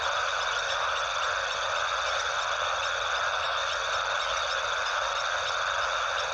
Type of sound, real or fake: real